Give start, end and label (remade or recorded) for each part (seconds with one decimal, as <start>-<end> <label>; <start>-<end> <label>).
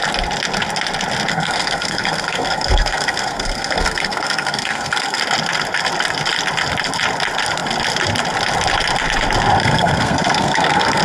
0.0-1.3 recorded; 1.3-5.2 remade; 5.2-9.6 recorded; 9.6-11.0 remade